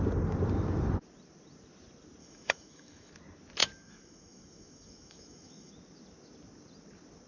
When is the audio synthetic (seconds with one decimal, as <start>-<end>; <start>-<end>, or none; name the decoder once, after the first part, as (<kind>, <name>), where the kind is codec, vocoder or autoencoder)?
2.2-3.1 (autoencoder, DAC-VAE); 3.6-5.7